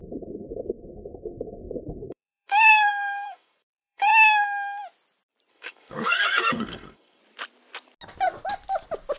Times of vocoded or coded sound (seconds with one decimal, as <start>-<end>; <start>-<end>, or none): 0.0-4.1; 5.5-7.2